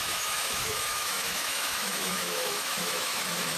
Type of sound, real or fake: fake